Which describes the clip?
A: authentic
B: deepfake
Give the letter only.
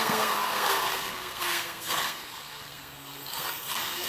B